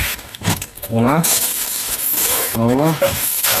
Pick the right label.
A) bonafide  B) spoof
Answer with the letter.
B